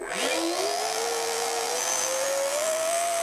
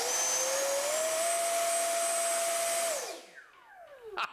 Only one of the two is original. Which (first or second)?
second